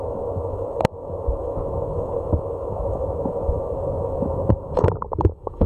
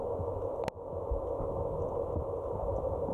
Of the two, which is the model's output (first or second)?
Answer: first